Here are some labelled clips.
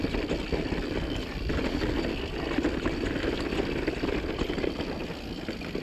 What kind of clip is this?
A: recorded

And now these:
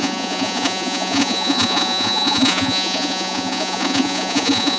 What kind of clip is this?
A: remade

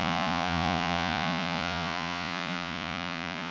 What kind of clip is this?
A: remade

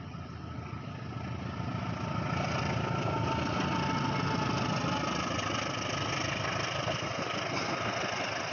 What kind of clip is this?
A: recorded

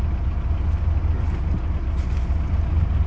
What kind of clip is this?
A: recorded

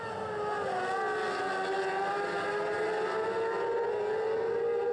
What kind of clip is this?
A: recorded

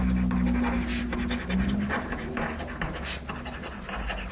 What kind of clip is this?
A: recorded